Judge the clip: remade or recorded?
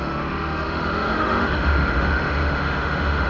remade